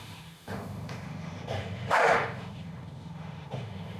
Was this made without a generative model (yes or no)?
no